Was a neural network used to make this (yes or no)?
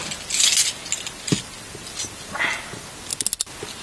no